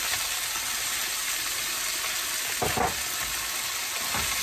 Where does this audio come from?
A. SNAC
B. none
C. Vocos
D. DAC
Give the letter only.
B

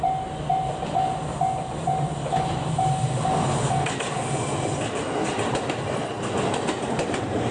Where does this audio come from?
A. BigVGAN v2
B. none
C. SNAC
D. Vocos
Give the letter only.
B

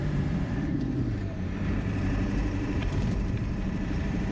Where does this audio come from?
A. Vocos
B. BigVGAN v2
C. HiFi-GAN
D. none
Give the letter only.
B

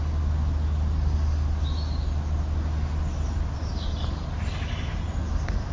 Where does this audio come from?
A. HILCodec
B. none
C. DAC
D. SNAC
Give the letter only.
B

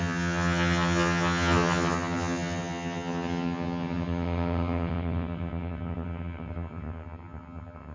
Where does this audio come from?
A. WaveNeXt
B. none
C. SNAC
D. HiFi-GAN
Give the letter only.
D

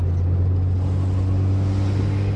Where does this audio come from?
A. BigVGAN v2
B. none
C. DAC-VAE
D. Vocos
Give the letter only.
B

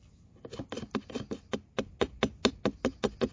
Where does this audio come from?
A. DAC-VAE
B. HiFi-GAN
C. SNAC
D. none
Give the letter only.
D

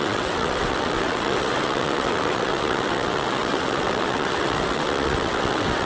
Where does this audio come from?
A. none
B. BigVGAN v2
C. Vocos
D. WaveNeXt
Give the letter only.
D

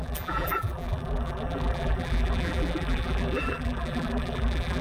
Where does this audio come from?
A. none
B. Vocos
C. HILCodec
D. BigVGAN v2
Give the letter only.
D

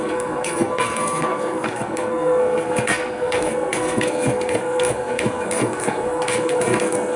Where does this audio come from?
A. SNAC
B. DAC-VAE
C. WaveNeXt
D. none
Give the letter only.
A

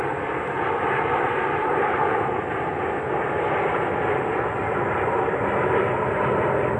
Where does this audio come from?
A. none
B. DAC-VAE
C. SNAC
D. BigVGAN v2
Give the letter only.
A